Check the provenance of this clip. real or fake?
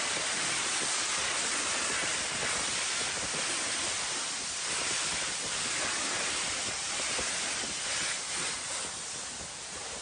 real